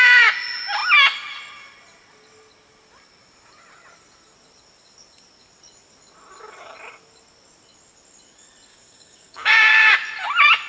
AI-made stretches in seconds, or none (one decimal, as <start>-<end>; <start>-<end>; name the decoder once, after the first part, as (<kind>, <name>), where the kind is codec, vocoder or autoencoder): 8.7-9.9 (codec, DAC)